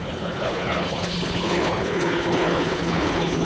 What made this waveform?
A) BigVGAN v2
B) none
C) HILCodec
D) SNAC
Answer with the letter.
C